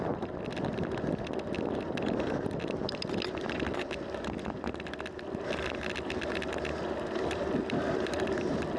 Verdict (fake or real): real